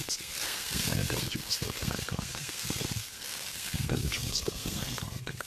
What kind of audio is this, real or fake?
fake